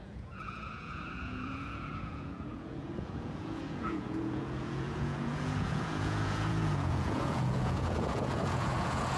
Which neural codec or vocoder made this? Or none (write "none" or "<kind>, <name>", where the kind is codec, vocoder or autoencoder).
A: vocoder, Vocos